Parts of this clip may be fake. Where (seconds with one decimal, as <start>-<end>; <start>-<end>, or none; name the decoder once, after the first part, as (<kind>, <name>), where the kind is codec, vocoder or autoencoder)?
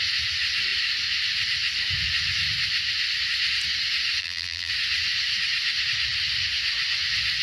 4.2-4.7 (vocoder, BigVGAN v2)